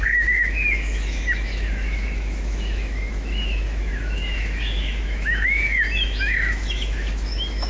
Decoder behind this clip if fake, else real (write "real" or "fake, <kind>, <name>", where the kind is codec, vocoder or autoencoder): fake, autoencoder, DAC-VAE